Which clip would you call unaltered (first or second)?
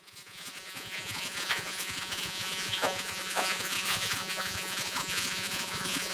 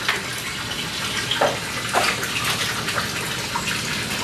second